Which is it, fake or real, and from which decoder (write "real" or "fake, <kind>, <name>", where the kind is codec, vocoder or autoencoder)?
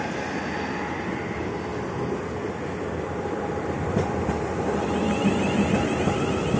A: real